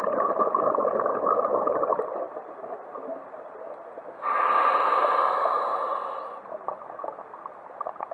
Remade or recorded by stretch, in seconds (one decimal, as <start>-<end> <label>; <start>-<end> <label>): 0.0-8.1 recorded